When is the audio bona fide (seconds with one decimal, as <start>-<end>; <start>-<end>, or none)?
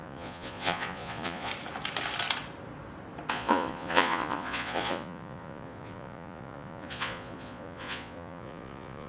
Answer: 1.5-3.3